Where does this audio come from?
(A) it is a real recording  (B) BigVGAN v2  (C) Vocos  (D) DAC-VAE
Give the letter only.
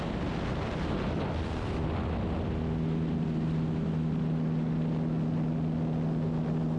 A